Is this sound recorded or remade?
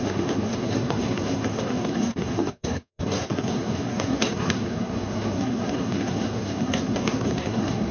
remade